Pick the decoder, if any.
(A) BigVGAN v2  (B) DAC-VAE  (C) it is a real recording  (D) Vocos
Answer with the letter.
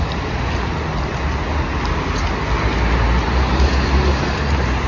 C